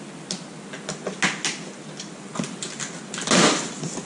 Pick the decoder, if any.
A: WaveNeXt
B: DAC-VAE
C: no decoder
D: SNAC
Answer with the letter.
C